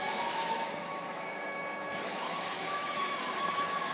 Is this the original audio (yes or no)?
no